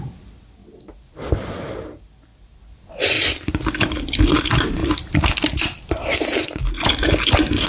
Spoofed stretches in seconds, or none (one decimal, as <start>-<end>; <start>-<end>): 5.0-6.4

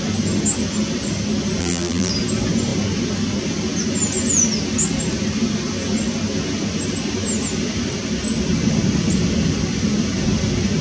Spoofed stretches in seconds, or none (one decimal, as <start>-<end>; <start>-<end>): 1.6-2.1